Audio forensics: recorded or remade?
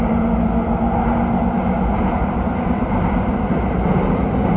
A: recorded